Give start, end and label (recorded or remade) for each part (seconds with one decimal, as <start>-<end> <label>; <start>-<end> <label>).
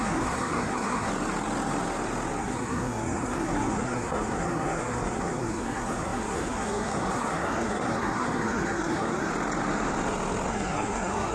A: 0.0-1.1 remade; 1.1-2.4 recorded; 2.4-9.3 remade; 9.3-10.5 recorded; 10.5-11.3 remade